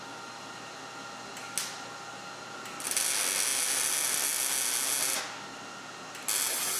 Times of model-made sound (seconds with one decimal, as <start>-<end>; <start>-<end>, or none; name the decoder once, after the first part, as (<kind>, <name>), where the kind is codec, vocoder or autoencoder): none